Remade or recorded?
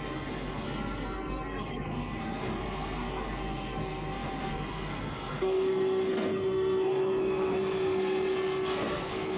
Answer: remade